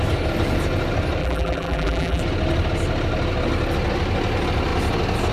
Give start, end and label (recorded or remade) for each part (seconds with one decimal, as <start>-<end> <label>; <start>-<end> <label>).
0.0-1.2 recorded; 1.2-2.2 remade; 2.2-5.3 recorded